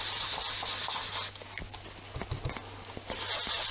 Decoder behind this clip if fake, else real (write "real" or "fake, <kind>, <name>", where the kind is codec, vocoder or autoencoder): real